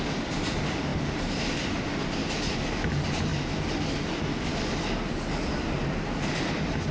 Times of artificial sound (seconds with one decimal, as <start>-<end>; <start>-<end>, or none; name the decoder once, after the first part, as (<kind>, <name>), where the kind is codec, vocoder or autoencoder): none